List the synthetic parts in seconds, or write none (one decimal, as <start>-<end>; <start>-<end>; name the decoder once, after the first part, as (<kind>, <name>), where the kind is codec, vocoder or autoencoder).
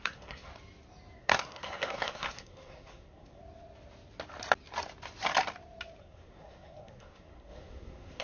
0.0-0.5 (codec, SNAC); 1.2-3.4; 6.0-8.2